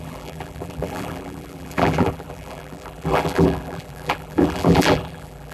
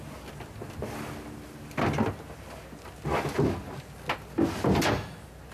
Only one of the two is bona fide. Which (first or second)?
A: second